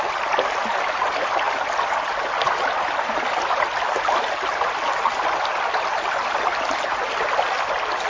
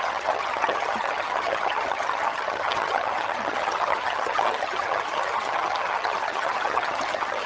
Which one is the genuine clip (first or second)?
first